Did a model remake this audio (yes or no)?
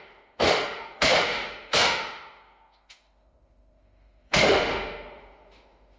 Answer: yes